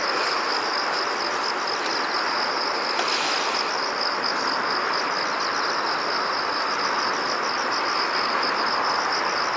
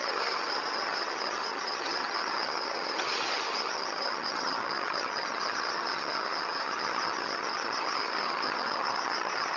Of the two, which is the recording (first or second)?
first